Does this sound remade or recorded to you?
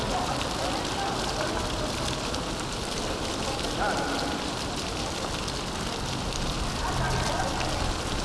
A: recorded